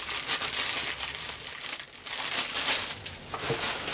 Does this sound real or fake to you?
real